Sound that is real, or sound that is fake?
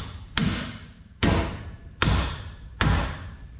fake